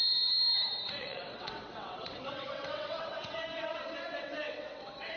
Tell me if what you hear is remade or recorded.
remade